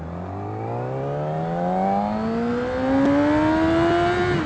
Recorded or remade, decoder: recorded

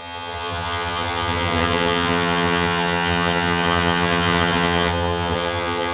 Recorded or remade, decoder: remade, vocoder, HiFi-GAN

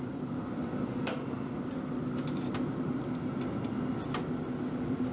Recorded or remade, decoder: recorded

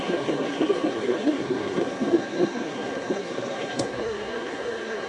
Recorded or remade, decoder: remade, codec, SNAC